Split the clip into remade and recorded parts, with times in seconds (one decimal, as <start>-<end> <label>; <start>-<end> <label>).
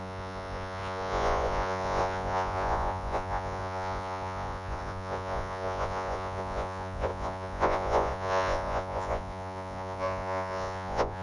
0.0-11.2 remade